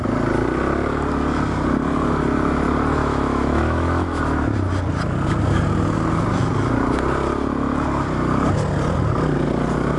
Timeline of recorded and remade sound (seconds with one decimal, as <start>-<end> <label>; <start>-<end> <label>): 0.0-3.0 recorded; 3.0-4.2 remade; 4.2-10.0 recorded